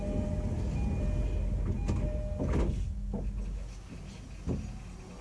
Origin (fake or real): real